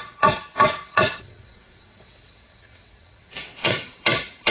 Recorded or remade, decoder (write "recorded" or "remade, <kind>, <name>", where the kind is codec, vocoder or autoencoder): remade, vocoder, WaveNeXt